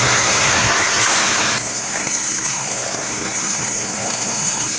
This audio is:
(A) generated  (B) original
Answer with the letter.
A